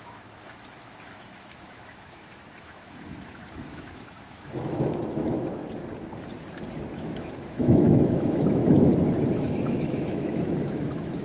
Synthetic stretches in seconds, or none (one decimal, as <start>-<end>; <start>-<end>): 0.0-5.6; 6.9-8.6; 9.3-11.2